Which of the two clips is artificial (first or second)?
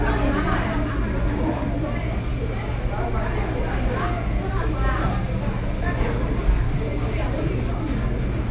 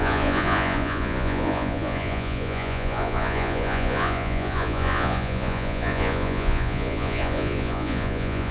second